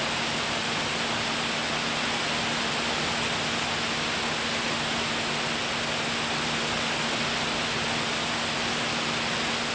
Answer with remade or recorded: recorded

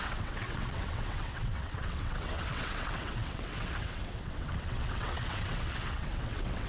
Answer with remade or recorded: remade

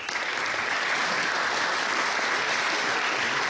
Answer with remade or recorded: recorded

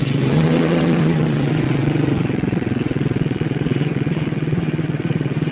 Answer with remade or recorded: remade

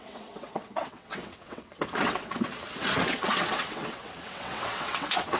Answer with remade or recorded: remade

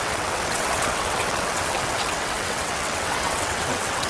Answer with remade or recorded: remade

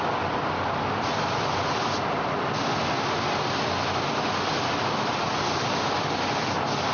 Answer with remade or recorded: recorded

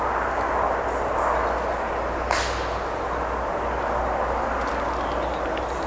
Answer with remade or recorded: recorded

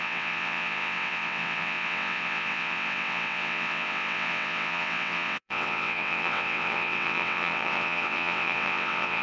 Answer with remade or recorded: remade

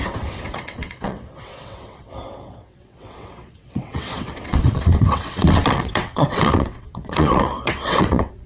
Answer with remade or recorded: remade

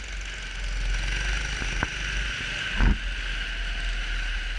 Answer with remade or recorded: recorded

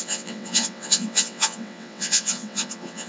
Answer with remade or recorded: remade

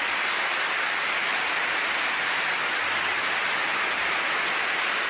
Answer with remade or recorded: recorded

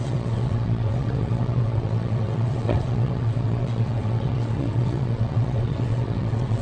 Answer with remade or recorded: remade